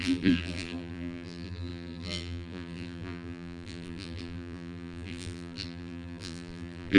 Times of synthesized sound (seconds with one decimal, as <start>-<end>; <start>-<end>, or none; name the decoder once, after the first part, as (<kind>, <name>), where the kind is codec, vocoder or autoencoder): 0.0-7.0 (vocoder, BigVGAN v2)